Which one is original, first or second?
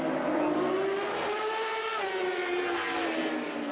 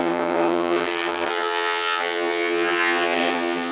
first